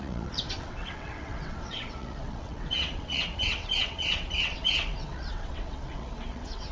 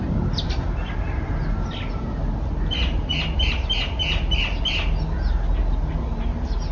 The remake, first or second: first